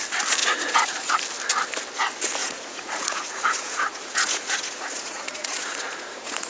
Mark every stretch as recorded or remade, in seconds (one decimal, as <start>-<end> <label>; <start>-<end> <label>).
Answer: 0.0-0.4 recorded; 0.4-1.1 remade; 1.1-2.4 recorded; 2.4-6.5 remade